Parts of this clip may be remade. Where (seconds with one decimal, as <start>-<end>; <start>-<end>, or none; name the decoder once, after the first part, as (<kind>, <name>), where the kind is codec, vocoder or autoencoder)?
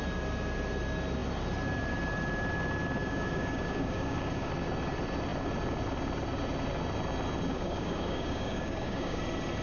3.0-4.5 (codec, DAC); 7.5-9.2